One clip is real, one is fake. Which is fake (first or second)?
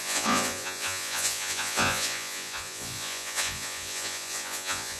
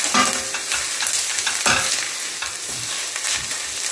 first